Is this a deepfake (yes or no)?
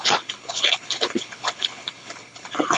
yes